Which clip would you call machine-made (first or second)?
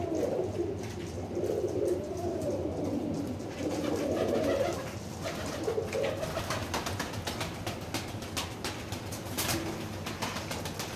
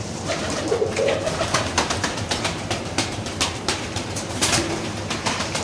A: second